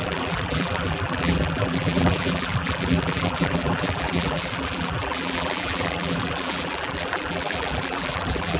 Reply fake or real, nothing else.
fake